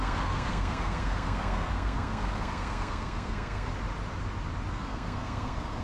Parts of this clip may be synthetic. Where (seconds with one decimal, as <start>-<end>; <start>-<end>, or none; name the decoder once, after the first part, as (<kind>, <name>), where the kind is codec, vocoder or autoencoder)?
0.0-3.7 (codec, SNAC); 4.7-5.8